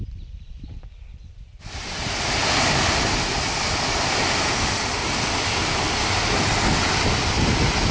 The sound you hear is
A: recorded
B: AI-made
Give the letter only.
B